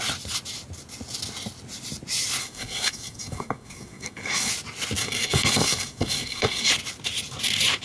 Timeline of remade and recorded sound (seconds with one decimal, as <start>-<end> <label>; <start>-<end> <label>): 0.0-2.4 recorded; 2.4-4.5 remade; 4.5-5.0 recorded; 5.0-6.7 remade; 6.7-7.8 recorded